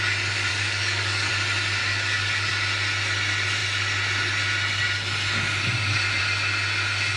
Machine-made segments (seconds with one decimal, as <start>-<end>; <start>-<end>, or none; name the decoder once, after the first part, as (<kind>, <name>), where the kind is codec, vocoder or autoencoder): 0.5-1.3 (codec, DAC); 1.8-2.5